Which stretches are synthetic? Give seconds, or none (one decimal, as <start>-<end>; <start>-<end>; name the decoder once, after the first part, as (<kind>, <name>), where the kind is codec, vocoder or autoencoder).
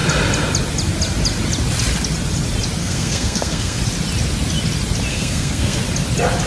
2.8-3.8 (codec, SNAC); 5.1-5.8